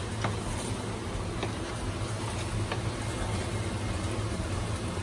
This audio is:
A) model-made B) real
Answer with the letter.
B